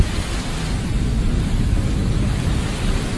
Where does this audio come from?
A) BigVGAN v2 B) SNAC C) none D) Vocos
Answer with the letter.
C